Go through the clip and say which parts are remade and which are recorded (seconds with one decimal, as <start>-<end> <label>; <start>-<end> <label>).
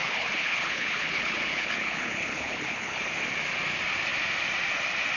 0.0-3.1 remade; 3.1-5.2 recorded